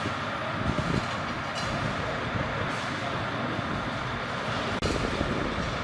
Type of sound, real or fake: real